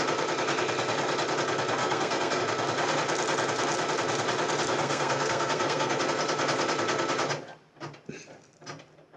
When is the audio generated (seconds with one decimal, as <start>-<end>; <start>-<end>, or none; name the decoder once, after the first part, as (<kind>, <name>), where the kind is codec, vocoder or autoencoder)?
1.8-2.4 (codec, SNAC); 4.8-6.0